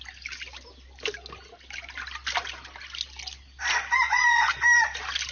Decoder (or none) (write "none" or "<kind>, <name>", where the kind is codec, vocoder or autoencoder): none